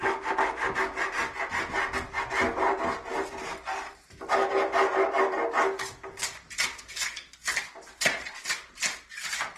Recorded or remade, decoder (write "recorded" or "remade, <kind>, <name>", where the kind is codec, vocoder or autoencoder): recorded